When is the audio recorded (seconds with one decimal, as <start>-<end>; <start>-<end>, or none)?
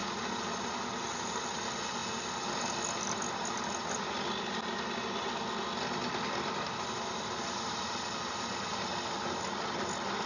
0.0-10.3